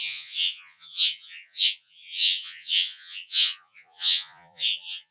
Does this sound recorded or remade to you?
remade